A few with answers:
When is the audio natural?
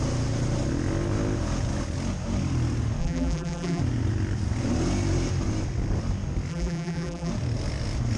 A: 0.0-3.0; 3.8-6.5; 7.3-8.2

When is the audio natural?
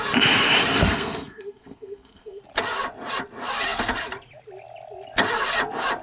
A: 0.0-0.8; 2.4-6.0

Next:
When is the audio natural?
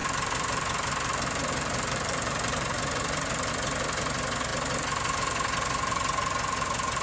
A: 3.5-7.0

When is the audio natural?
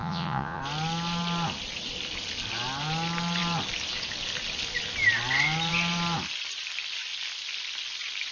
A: 0.6-8.3